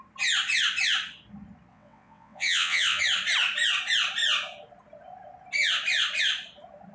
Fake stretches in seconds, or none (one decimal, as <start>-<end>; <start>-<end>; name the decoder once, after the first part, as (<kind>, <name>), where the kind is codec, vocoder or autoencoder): 1.7-3.0 (vocoder, WaveNeXt)